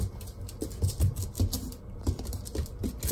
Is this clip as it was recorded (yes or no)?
yes